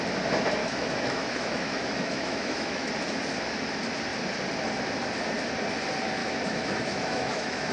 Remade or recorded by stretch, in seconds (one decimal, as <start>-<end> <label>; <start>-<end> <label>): 0.0-0.6 recorded; 0.6-2.9 remade; 2.9-6.2 recorded; 6.2-7.7 remade